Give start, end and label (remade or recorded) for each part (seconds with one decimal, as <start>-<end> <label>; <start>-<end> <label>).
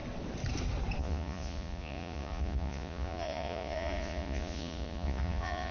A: 0.0-1.0 recorded; 1.0-5.7 remade